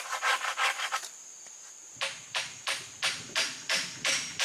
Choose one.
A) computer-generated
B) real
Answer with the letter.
B